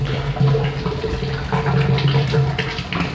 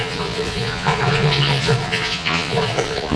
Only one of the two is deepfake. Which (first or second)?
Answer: second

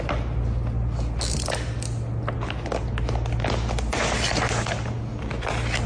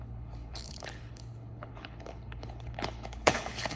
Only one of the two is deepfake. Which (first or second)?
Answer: second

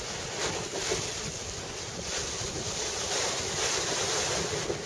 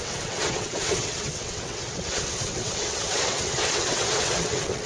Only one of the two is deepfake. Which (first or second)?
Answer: second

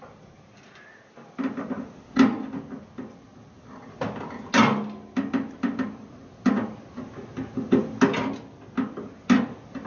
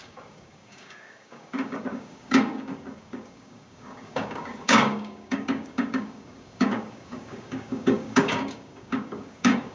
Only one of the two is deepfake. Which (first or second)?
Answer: second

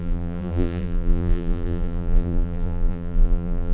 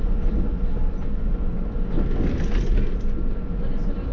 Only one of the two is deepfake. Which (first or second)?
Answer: first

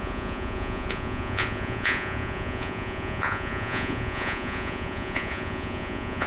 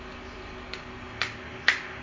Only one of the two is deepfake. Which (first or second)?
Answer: first